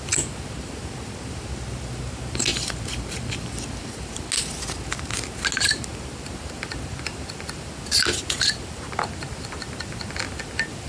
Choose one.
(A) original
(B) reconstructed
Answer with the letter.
A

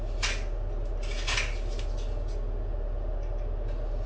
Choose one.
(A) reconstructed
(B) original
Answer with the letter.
B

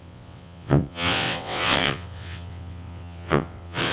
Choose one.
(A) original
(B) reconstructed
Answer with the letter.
B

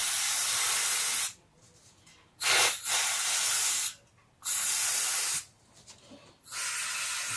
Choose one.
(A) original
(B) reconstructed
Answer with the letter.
A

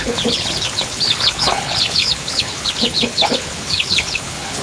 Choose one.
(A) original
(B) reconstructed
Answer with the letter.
B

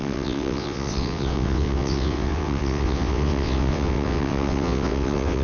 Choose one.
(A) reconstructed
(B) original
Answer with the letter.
A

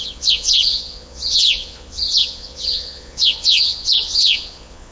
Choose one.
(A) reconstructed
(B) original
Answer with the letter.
A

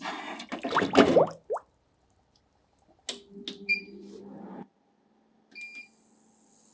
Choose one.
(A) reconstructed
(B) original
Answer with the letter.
B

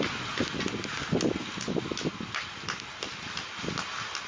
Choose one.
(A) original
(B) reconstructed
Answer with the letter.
A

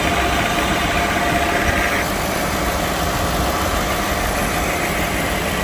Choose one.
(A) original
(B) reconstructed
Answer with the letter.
A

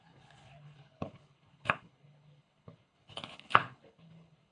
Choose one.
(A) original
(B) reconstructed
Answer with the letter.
B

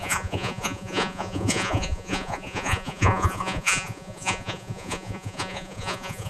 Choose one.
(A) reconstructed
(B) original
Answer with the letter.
A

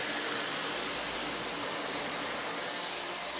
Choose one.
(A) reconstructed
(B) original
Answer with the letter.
B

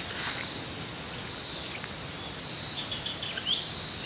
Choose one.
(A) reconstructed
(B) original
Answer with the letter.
B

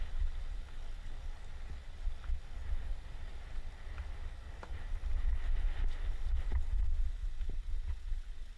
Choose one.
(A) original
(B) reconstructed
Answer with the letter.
A